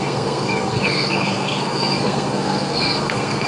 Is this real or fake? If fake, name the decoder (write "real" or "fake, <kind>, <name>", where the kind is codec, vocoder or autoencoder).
fake, codec, SNAC